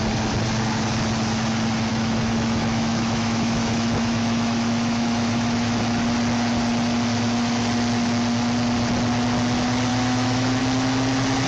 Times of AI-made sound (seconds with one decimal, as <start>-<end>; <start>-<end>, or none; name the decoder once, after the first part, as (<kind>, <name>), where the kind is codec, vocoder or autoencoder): 1.9-5.8 (autoencoder, DAC-VAE); 9.9-10.6